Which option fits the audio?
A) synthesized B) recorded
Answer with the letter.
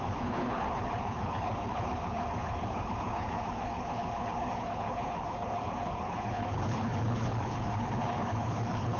A